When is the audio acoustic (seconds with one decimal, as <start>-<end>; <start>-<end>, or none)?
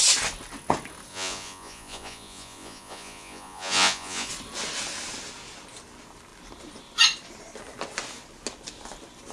0.0-1.1; 4.3-9.3